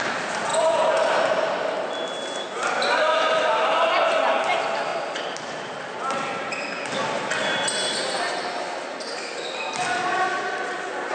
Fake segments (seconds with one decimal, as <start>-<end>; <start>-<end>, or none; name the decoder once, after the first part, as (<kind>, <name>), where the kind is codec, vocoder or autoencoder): none